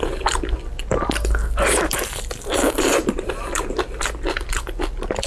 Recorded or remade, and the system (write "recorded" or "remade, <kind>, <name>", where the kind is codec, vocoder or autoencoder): recorded